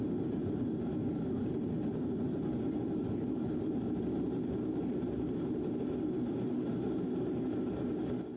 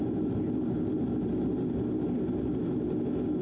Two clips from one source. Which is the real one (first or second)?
second